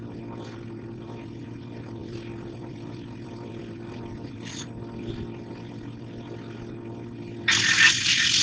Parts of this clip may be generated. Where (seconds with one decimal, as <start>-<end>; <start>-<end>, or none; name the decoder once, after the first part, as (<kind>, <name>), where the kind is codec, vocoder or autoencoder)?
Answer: 2.0-5.1 (vocoder, BigVGAN v2)